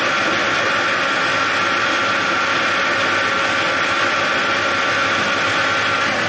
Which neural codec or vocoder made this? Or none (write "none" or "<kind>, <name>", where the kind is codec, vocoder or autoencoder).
none